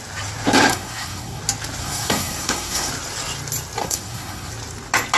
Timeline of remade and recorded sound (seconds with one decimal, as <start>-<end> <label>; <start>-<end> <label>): 0.0-0.7 recorded; 0.7-1.4 remade; 1.4-1.8 recorded; 1.8-2.9 remade; 2.9-3.8 recorded; 3.8-4.5 remade; 4.5-5.2 recorded